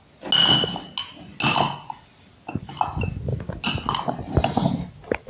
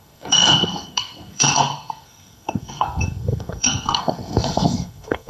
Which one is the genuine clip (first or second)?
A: first